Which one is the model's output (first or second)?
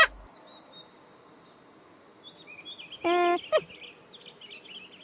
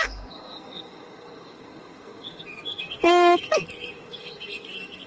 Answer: second